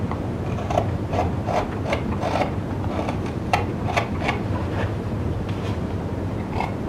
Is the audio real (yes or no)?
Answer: no